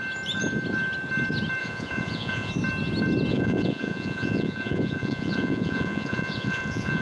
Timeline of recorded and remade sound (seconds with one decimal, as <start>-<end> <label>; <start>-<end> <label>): 0.0-1.6 recorded; 1.6-2.5 remade; 2.5-3.3 recorded; 3.3-7.0 remade